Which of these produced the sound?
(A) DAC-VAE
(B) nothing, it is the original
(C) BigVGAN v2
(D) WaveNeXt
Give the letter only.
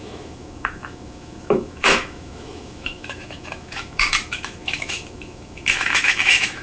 A